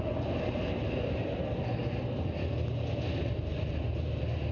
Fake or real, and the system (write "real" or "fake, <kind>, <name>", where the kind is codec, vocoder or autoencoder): real